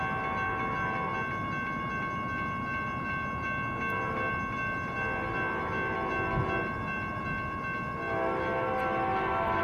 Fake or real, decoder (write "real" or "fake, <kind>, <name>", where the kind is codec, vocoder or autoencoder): real